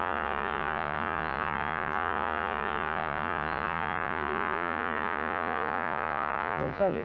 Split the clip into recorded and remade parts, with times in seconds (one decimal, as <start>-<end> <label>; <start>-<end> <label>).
0.0-7.0 remade